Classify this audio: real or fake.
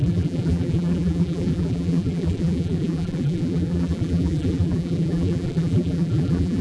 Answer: fake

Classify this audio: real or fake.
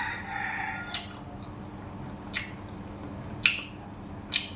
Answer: real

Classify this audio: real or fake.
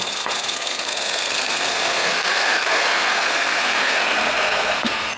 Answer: fake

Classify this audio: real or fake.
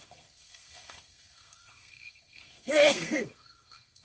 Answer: fake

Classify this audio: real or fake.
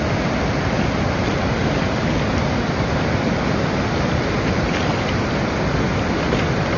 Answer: real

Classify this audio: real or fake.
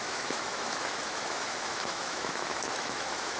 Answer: fake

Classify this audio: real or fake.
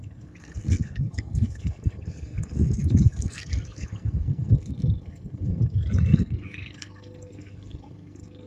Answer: fake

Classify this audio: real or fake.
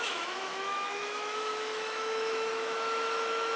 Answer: fake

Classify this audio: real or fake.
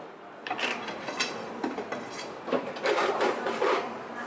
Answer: fake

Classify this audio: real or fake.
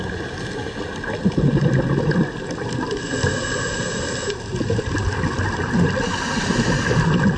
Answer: real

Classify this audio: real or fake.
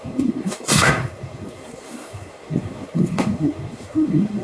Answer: fake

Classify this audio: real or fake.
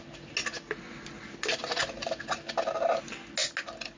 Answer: real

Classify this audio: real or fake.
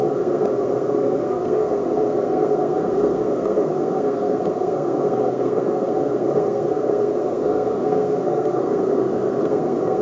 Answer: fake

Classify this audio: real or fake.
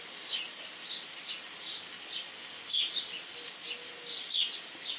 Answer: real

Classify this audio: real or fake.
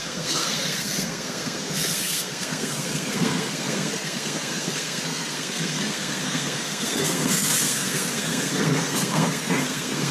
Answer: fake